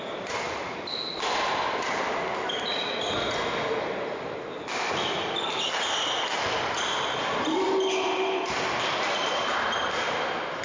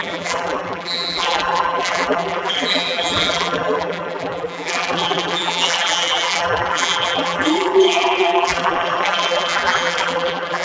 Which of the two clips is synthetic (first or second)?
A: second